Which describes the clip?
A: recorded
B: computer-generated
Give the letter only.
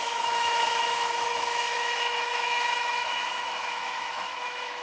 B